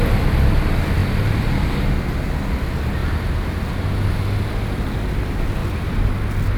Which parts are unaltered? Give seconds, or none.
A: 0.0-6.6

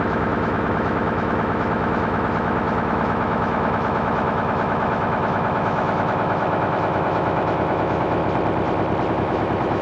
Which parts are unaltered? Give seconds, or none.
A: 8.2-9.1

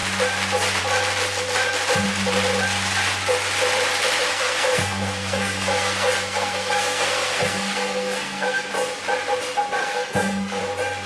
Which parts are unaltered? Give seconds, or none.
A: 0.0-4.3; 8.7-9.8; 10.6-11.1

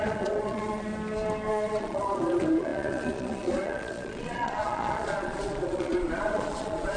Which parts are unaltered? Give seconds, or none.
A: 0.9-1.5